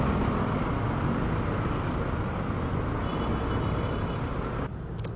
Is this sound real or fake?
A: real